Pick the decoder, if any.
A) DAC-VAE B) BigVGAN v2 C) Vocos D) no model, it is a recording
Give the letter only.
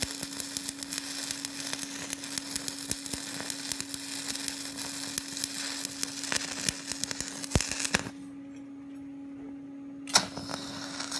D